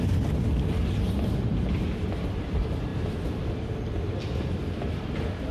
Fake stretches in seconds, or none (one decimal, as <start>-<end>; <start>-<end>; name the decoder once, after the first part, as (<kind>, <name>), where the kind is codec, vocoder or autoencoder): none